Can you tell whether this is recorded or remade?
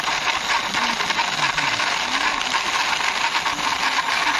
recorded